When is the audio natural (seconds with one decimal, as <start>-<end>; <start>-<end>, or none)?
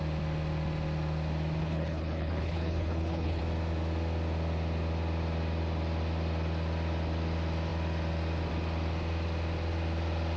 0.0-1.6; 3.4-10.4